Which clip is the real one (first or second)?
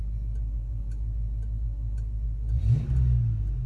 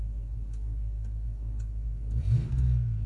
first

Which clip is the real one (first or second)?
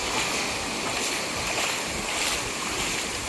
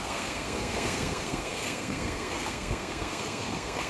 first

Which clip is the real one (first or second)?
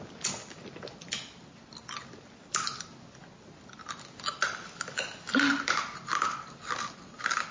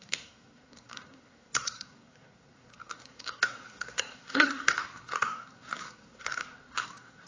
first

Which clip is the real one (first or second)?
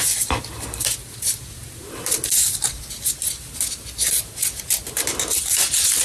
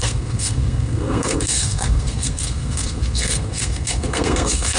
first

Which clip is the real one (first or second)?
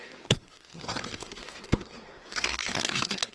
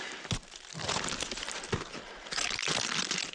second